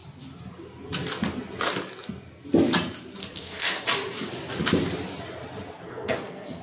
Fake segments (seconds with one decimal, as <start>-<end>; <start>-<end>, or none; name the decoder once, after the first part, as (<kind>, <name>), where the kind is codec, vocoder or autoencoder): 3.2-3.8 (codec, SNAC); 5.9-6.6